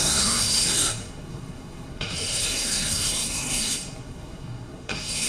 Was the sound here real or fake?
fake